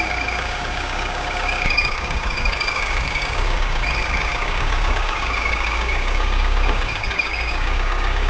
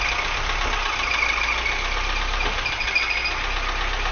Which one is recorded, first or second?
second